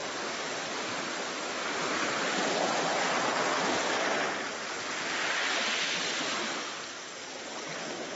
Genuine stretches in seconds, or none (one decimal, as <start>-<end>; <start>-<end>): 0.0-8.2